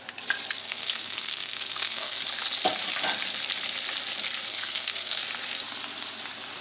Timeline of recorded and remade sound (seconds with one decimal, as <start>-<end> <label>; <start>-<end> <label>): 0.0-0.6 recorded; 0.6-2.2 remade; 2.2-4.5 recorded; 4.5-5.2 remade; 5.2-6.6 recorded